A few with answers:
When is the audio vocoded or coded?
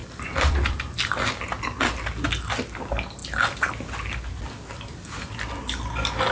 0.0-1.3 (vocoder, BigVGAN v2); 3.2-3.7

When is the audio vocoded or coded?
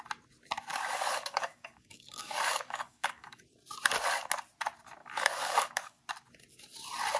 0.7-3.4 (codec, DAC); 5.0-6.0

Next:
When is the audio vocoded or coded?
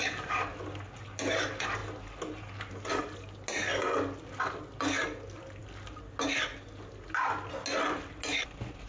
none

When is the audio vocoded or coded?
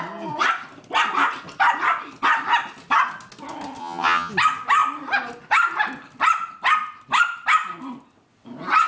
3.8-4.3 (vocoder, HiFi-GAN)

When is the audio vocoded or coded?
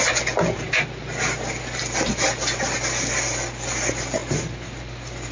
none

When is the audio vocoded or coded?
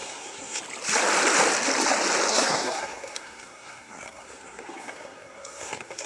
0.0-0.6 (codec, SNAC); 2.3-6.1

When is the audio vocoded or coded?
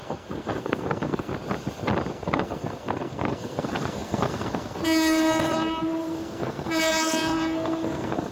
0.0-1.3 (codec, SNAC); 2.1-8.3